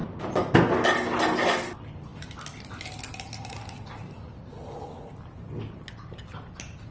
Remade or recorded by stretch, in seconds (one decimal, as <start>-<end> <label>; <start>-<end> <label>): 0.0-6.9 recorded